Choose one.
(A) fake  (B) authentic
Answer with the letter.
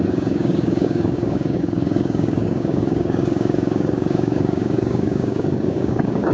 A